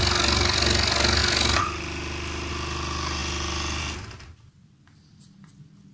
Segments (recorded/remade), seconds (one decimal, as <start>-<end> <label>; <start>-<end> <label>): 0.0-5.9 recorded